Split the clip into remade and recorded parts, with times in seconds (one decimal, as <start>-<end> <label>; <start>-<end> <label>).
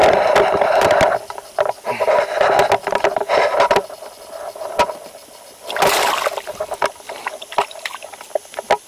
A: 0.0-8.9 recorded